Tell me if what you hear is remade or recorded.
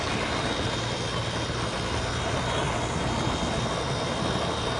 recorded